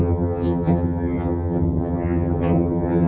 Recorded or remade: remade